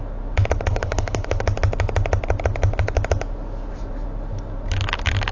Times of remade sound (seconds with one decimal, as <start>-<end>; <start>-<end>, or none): 0.7-1.4